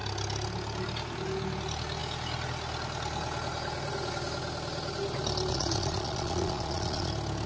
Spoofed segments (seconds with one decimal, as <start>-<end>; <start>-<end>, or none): 5.5-7.1